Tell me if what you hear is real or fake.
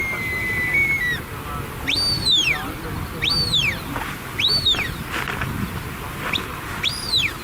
real